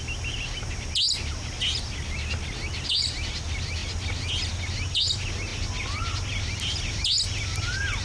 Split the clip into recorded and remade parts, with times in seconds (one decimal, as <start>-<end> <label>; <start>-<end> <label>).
0.0-8.0 recorded

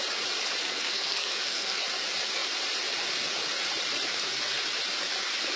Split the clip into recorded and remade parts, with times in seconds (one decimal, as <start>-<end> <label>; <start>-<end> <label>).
0.0-0.6 recorded; 0.6-1.8 remade; 1.8-5.6 recorded

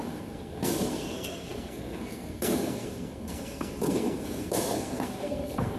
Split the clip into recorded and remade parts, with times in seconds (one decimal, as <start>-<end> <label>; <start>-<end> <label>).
0.0-5.8 remade

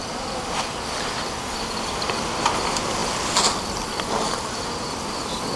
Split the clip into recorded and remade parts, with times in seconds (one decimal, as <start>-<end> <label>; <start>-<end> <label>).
0.0-5.6 recorded

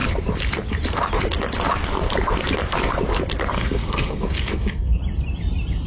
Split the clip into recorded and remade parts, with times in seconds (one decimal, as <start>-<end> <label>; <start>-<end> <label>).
0.0-3.5 recorded; 3.5-5.0 remade; 5.0-5.9 recorded

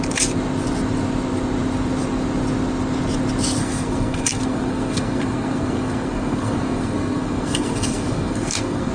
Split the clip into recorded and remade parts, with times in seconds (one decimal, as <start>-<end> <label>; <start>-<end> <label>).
0.0-3.6 recorded; 3.6-8.9 remade

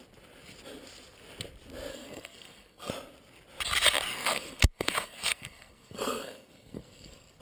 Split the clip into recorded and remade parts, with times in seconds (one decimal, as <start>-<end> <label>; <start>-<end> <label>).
0.0-1.9 recorded; 1.9-2.9 remade; 2.9-4.1 recorded; 4.1-7.4 remade

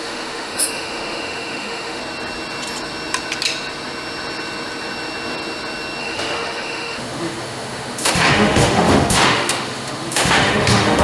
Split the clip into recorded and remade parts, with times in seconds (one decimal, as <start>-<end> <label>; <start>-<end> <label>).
0.0-2.0 remade; 2.0-6.0 recorded; 6.0-11.0 remade